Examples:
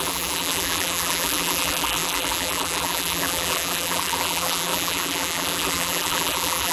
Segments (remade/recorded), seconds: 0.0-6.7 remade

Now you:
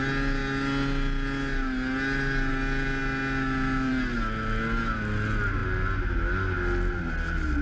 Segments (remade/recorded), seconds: 0.0-7.6 recorded

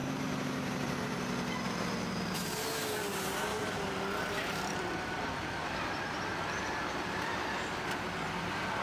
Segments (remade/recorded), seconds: 0.0-1.2 remade; 1.2-3.6 recorded; 3.6-8.8 remade

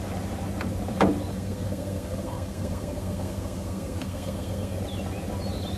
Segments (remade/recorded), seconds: 0.0-1.3 recorded; 1.3-4.8 remade; 4.8-5.8 recorded

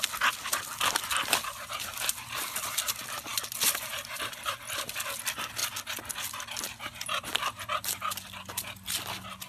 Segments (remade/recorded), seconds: 0.0-9.5 recorded

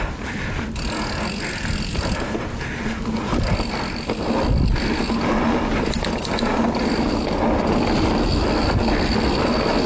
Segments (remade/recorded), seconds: 0.0-9.9 recorded

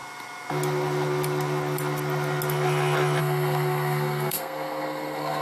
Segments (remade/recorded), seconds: 0.0-3.2 recorded; 3.2-5.4 remade